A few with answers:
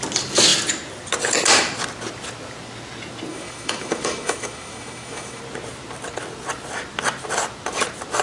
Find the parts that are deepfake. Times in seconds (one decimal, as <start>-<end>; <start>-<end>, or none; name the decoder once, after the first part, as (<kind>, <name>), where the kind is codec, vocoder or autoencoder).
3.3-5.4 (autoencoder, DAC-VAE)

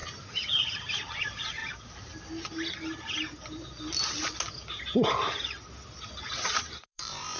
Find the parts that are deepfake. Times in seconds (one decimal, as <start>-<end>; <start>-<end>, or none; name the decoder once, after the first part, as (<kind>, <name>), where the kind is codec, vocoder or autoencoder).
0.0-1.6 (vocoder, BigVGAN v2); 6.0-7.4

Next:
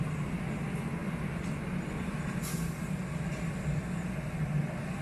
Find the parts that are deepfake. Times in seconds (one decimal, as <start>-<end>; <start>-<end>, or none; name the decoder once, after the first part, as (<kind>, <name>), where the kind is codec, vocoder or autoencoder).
none

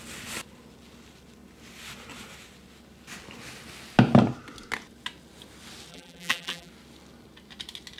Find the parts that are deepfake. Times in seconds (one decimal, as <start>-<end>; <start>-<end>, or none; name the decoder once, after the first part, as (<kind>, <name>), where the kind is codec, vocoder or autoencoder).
5.9-6.7 (vocoder, BigVGAN v2)

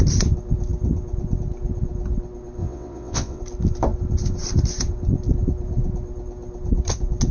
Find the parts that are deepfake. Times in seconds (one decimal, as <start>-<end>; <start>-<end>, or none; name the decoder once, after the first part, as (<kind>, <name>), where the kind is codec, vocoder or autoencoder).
2.6-3.4 (vocoder, WaveNeXt)

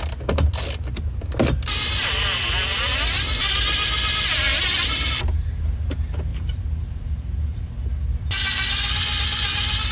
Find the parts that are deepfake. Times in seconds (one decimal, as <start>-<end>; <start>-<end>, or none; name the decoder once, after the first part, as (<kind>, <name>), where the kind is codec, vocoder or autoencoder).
4.5-5.1 (vocoder, BigVGAN v2); 6.3-7.8